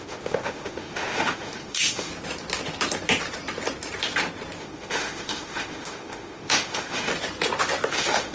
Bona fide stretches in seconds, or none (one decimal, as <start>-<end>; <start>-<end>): 2.1-4.6; 7.1-7.9